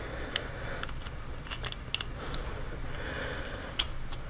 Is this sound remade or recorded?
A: recorded